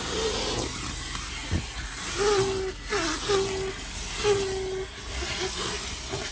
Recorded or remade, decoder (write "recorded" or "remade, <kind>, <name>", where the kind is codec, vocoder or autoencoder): recorded